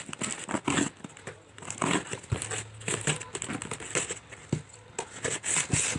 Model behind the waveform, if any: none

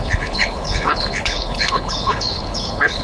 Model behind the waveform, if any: codec, HILCodec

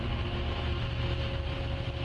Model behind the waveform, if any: none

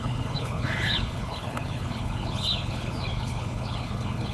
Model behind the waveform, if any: codec, HILCodec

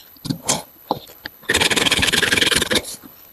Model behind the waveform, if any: codec, HILCodec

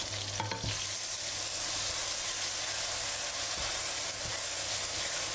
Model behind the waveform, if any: none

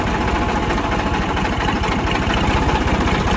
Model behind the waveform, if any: none